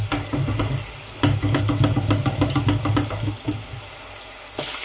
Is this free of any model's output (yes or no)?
yes